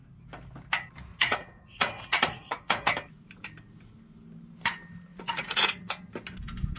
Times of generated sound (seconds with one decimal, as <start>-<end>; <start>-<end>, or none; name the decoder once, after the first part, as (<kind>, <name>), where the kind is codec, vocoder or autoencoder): 1.1-2.9 (vocoder, Vocos); 5.1-5.8